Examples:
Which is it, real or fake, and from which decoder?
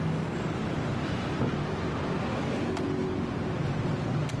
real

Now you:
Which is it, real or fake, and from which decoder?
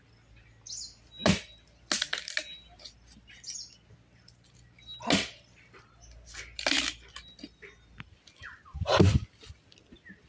real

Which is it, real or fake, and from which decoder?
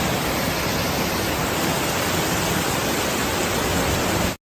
real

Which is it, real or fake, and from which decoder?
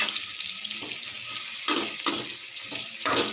real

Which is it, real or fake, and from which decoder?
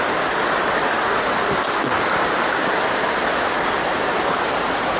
real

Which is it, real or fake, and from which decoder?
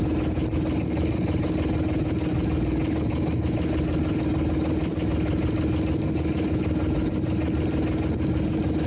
real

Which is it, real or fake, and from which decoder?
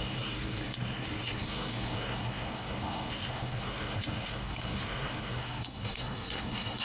fake, codec, SNAC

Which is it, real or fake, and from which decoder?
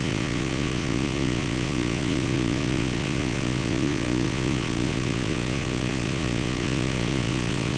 fake, vocoder, Vocos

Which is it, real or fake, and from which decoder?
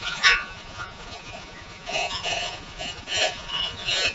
fake, vocoder, Vocos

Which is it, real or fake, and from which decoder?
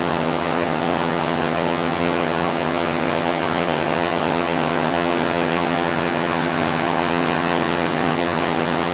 fake, vocoder, HiFi-GAN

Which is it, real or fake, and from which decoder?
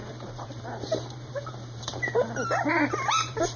fake, vocoder, BigVGAN v2